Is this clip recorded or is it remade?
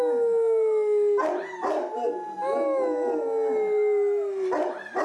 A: recorded